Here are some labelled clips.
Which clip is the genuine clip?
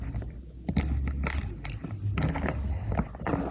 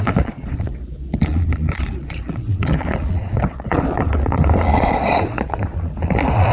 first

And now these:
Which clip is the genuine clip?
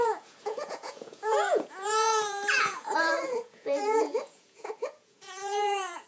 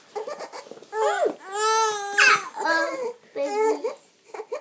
second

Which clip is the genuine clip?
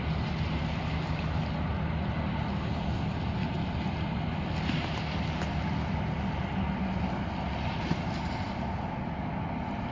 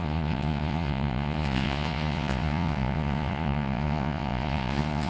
first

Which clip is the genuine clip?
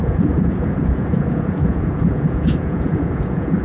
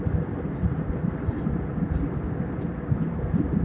second